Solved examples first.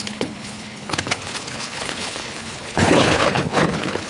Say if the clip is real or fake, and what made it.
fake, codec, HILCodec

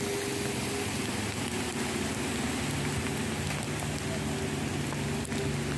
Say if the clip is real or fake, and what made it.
real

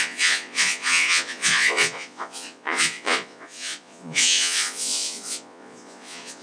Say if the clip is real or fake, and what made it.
fake, vocoder, Vocos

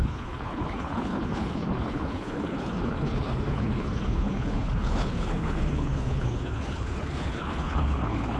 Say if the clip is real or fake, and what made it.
fake, codec, HILCodec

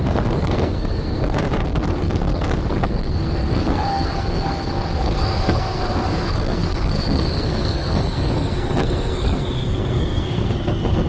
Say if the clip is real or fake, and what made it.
fake, codec, SNAC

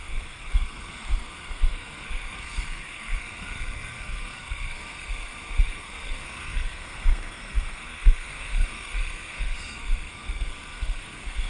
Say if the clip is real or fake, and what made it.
fake, codec, SNAC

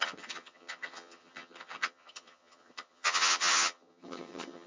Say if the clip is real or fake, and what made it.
fake, vocoder, HiFi-GAN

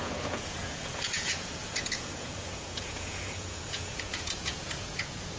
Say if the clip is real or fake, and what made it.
fake, vocoder, Vocos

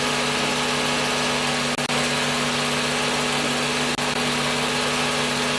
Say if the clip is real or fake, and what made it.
real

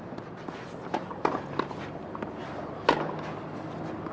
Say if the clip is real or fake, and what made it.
real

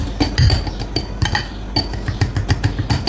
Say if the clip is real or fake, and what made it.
real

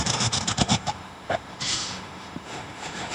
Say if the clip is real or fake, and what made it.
fake, autoencoder, DAC-VAE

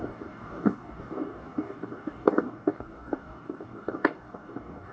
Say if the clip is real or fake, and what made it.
fake, codec, DAC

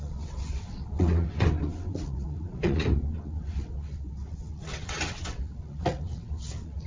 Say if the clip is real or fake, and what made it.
fake, vocoder, WaveNeXt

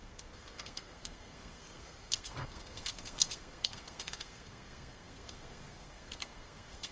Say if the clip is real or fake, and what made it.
fake, codec, SNAC